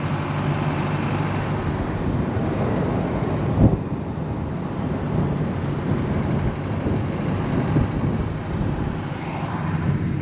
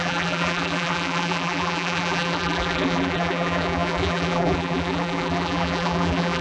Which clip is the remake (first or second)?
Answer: second